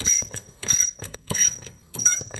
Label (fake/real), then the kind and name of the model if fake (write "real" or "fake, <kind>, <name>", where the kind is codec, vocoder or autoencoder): fake, codec, SNAC